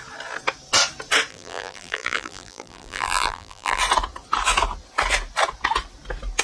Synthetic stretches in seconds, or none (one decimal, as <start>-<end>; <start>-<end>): 1.3-3.8